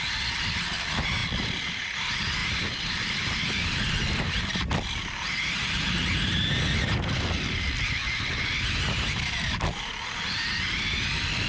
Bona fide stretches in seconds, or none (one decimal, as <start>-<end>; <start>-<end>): 0.0-2.4; 4.4-8.0; 9.6-11.5